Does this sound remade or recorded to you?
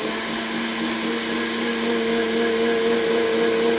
recorded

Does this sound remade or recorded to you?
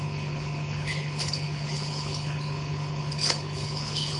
remade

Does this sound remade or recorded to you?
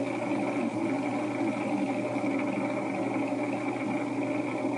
recorded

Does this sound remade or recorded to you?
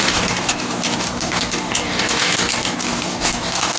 remade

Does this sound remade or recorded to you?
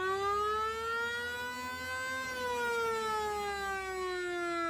recorded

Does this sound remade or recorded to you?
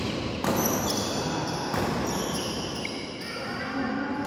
recorded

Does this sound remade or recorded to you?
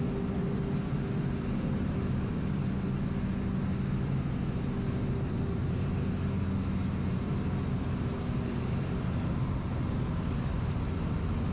recorded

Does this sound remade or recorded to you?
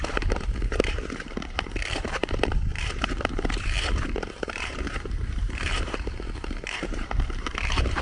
remade